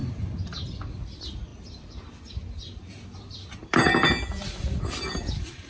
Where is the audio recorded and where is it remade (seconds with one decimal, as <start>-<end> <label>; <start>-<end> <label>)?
0.0-5.7 recorded